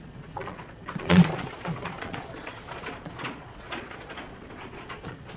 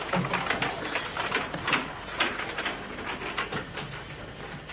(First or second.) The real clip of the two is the second